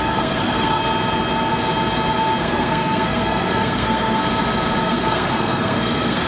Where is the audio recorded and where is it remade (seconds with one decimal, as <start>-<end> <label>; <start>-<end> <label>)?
0.0-0.8 remade; 0.8-2.4 recorded; 2.4-4.2 remade; 4.2-4.8 recorded; 4.8-6.3 remade

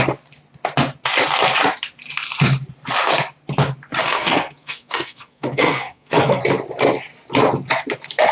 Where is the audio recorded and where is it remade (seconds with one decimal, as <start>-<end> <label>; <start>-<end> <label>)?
0.0-4.0 recorded; 4.0-6.4 remade; 6.4-8.3 recorded

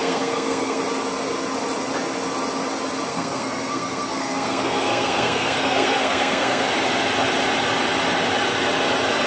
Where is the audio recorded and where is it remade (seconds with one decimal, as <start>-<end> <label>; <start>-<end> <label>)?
0.0-0.8 remade; 0.8-3.1 recorded; 3.1-6.7 remade; 6.7-9.3 recorded

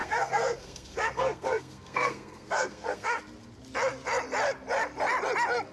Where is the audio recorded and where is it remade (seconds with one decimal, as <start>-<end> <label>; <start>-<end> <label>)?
0.0-3.2 remade; 3.2-5.7 recorded

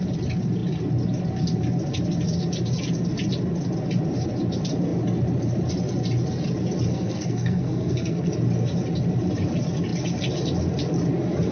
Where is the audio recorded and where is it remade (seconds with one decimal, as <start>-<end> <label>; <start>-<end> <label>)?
0.0-6.9 recorded; 6.9-8.3 remade; 8.3-11.5 recorded